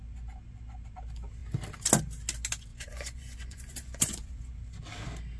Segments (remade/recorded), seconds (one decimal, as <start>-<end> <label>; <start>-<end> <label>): 0.0-2.7 recorded; 2.7-4.5 remade; 4.5-5.4 recorded